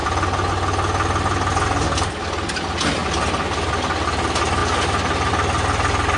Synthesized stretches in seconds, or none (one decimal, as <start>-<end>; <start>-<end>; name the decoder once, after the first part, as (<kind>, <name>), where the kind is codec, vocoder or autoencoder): 0.0-0.5 (vocoder, BigVGAN v2)